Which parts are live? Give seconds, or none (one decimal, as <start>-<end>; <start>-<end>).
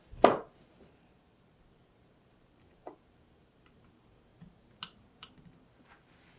4.3-5.0